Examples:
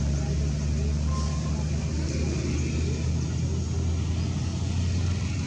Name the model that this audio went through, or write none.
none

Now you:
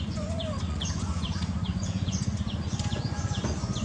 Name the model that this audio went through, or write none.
vocoder, Vocos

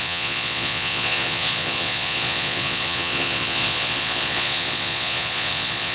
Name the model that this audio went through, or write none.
vocoder, Vocos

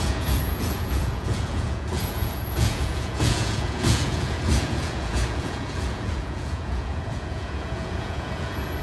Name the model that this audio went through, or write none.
vocoder, Vocos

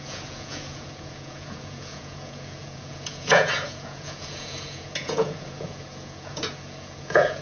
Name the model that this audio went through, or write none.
vocoder, Vocos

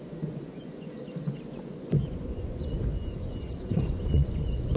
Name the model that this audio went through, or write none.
vocoder, Vocos